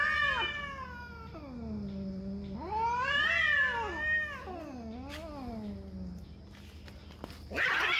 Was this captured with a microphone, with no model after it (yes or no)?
yes